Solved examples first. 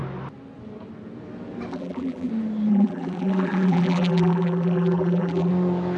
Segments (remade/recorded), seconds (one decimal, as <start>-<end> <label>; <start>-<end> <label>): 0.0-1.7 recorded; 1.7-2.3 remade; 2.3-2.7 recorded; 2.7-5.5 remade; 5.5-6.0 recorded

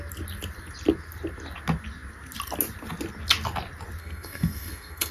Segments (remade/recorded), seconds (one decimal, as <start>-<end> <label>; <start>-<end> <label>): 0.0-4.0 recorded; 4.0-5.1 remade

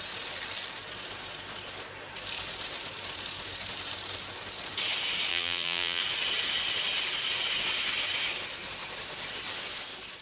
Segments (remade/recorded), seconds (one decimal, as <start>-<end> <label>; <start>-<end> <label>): 0.0-5.3 recorded; 5.3-6.0 remade; 6.0-10.2 recorded

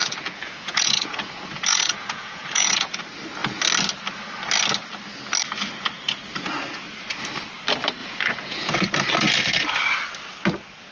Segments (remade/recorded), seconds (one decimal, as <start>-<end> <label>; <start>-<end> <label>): 0.0-3.0 remade; 3.0-8.0 recorded; 8.0-8.8 remade; 8.8-10.9 recorded

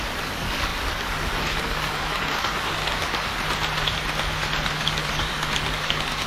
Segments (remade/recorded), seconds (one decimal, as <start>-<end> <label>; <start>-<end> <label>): 0.0-3.3 remade; 3.3-4.7 recorded; 4.7-6.3 remade

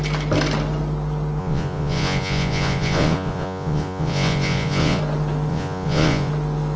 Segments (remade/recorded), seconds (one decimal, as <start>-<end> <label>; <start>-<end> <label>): 0.0-1.4 recorded; 1.4-5.0 remade; 5.0-5.5 recorded; 5.5-6.3 remade; 6.3-6.8 recorded